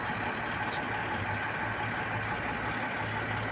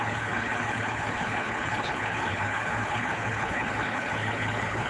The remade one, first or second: second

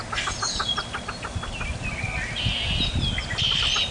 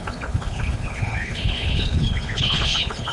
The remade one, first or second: second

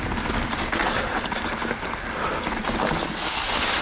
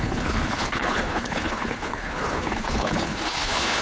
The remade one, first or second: second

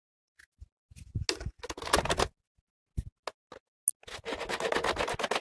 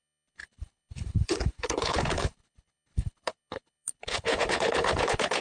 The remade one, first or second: second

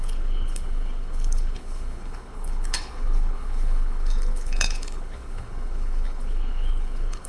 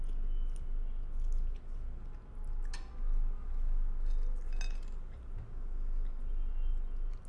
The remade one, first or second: first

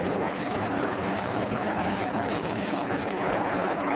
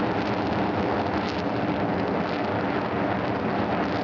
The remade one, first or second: first